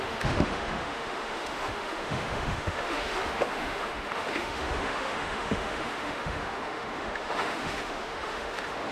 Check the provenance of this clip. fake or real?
fake